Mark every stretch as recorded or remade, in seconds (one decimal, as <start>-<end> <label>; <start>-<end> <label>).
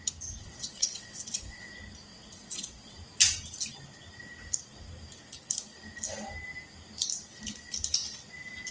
0.0-0.4 recorded; 0.4-1.7 remade; 1.7-2.1 recorded; 2.1-3.0 remade; 3.0-8.7 recorded